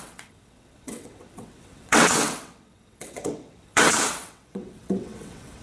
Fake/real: fake